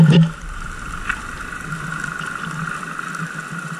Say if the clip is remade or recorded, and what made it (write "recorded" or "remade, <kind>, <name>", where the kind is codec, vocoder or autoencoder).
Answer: recorded